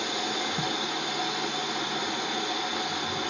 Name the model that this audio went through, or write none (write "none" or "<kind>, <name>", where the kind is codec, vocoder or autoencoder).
none